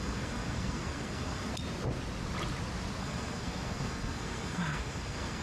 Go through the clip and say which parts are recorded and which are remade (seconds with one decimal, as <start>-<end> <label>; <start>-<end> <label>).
0.0-1.5 remade; 1.5-3.0 recorded; 3.0-5.4 remade